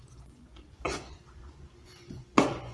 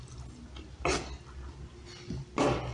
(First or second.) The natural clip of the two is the second